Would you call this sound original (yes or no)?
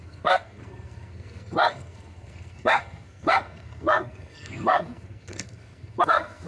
no